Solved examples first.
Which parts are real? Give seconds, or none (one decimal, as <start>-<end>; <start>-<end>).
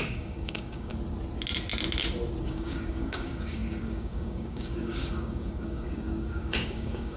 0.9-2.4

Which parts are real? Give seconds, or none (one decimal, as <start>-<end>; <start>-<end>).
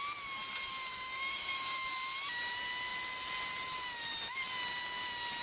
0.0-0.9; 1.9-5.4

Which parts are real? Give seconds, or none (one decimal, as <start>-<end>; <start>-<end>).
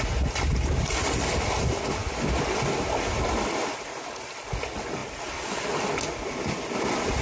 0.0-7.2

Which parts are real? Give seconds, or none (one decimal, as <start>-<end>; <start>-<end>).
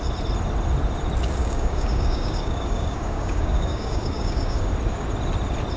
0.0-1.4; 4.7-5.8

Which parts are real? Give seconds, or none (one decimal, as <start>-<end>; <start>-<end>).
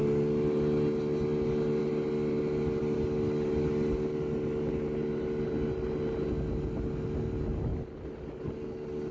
0.0-9.1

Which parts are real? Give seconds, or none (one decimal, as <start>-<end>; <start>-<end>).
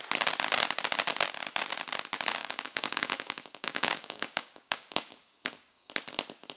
0.0-2.4; 5.9-6.6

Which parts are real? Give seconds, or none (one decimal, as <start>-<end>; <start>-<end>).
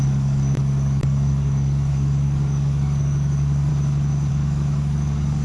3.7-4.3